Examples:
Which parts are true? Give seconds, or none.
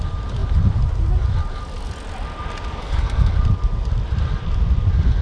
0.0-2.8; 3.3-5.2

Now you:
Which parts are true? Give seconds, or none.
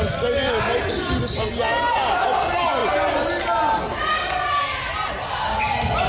0.0-6.1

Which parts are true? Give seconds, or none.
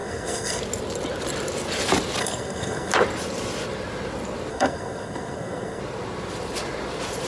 0.6-2.2; 2.9-4.5; 5.8-7.3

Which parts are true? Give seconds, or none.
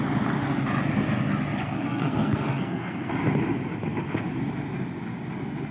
0.0-1.6; 3.1-5.7